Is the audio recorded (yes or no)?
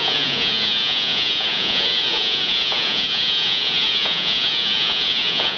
no